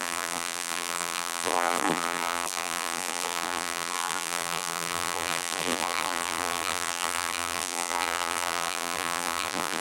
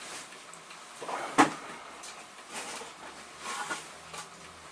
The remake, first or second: first